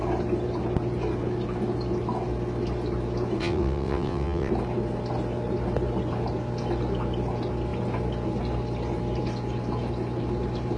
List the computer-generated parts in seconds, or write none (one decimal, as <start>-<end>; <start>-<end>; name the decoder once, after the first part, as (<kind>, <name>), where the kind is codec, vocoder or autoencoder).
3.4-4.5 (vocoder, WaveNeXt)